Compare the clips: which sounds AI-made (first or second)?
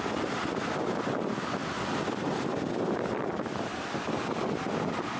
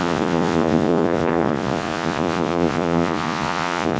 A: second